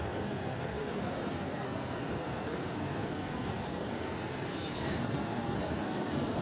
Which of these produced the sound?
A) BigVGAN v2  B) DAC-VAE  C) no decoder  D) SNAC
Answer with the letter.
D